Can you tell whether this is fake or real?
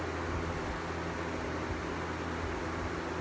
real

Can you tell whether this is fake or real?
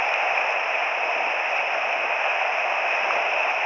real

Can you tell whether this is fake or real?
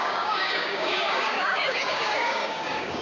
fake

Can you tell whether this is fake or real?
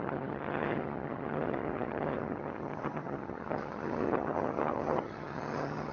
fake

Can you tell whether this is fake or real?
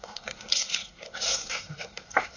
fake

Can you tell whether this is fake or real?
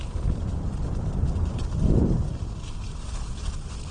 real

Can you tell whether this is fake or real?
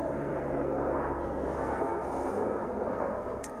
fake